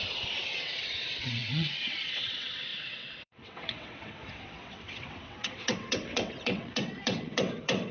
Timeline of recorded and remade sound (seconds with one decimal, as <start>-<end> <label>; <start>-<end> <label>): 0.0-7.9 remade